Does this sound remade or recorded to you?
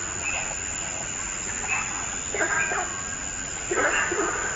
recorded